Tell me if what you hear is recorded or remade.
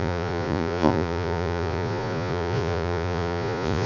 remade